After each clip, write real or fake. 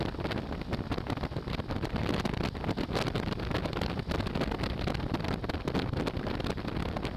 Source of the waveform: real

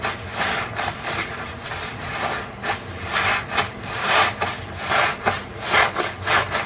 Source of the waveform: fake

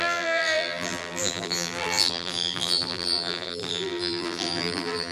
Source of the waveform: fake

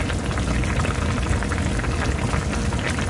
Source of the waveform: real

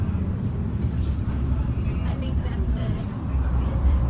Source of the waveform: fake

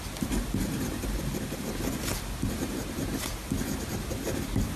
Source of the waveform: real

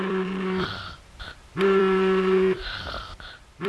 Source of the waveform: fake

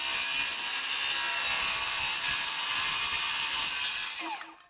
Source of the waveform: real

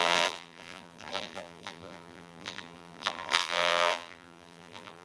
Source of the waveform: fake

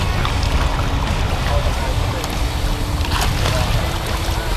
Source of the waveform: real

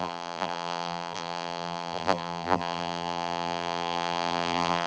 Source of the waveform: fake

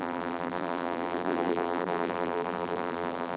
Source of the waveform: fake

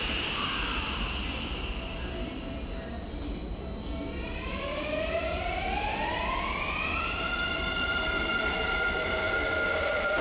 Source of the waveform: fake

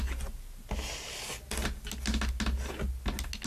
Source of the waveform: real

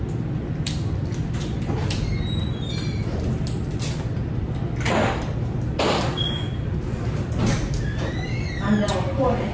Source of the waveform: real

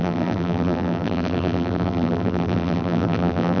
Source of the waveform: fake